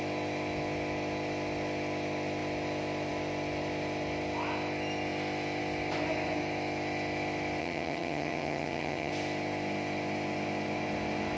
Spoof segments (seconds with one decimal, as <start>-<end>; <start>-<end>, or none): 7.6-9.1